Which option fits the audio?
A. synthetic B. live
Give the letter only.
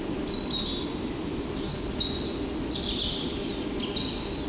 B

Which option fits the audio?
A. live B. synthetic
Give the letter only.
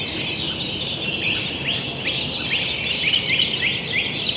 A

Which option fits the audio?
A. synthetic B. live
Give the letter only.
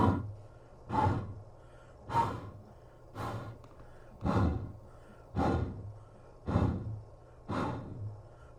B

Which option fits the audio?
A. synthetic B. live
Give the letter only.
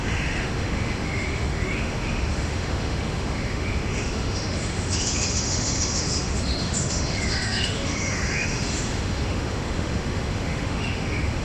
A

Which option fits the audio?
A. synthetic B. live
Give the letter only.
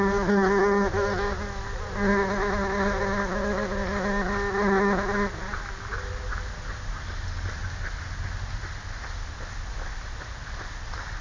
B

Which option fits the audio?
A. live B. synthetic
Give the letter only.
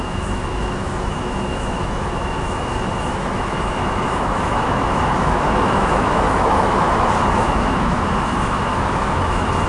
B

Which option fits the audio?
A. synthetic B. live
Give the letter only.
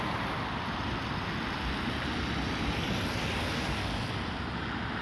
B